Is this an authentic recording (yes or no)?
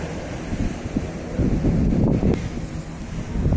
yes